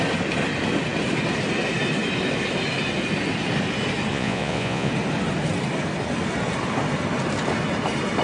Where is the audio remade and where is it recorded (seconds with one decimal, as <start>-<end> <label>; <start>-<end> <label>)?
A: 0.0-4.1 recorded; 4.1-4.9 remade; 4.9-8.2 recorded